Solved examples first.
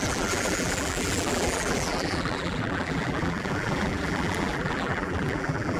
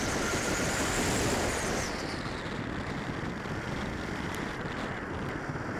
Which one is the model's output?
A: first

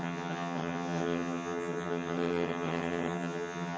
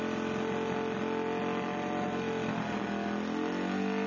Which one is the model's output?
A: first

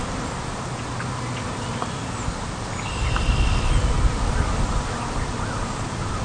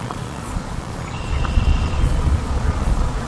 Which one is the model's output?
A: second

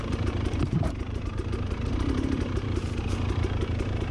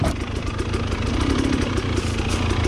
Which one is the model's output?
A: first